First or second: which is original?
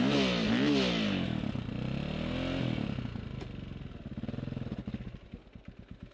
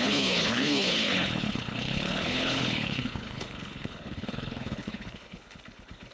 first